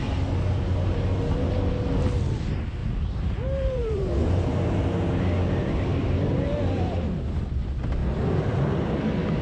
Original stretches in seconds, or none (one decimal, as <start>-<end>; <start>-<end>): 0.0-2.8; 5.1-9.4